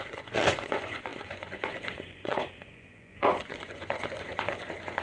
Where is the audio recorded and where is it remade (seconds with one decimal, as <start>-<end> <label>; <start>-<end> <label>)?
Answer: 0.0-5.0 remade